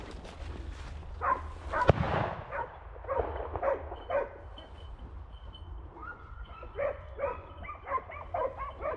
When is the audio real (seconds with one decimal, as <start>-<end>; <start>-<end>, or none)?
0.0-6.0; 7.5-9.0